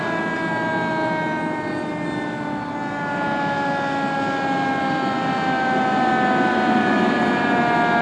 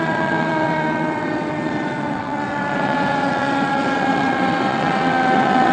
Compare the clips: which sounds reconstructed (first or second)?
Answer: second